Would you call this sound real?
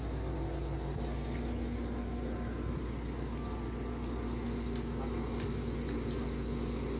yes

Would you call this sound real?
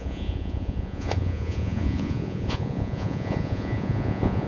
no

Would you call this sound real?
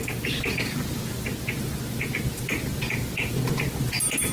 yes